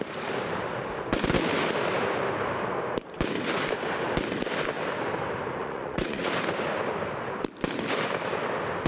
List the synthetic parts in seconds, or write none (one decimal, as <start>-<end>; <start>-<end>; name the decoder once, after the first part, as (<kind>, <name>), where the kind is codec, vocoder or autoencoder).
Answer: 5.6-6.3 (vocoder, Vocos)